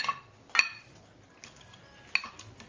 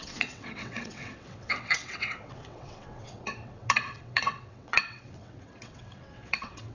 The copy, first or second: second